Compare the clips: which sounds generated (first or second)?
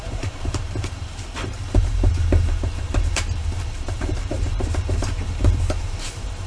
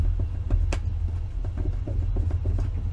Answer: first